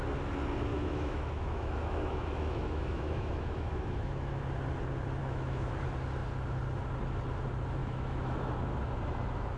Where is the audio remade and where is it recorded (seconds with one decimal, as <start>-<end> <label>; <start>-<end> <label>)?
0.0-0.7 recorded; 0.7-4.4 remade; 4.4-5.2 recorded; 5.2-5.7 remade; 5.7-7.8 recorded; 7.8-8.5 remade; 8.5-9.6 recorded